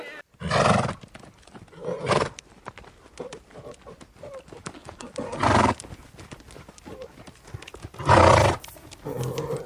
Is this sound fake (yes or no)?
no